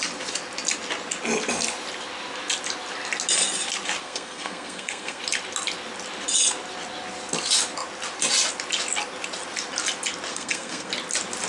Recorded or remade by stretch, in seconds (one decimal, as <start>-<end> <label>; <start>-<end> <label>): 0.0-4.0 recorded; 4.0-5.2 remade; 5.2-10.3 recorded; 10.3-10.9 remade; 10.9-11.5 recorded